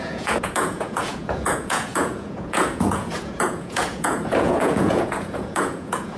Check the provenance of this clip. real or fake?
fake